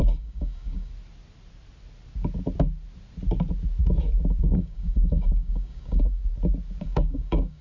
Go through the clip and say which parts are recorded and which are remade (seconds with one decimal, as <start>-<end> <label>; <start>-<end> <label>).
0.0-0.9 remade; 0.9-4.4 recorded; 4.4-6.2 remade; 6.2-6.8 recorded; 6.8-7.6 remade